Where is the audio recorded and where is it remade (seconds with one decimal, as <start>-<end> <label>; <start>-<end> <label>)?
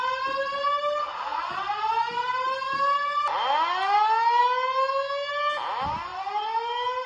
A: 0.0-7.1 recorded